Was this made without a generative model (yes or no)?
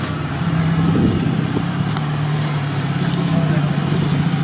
yes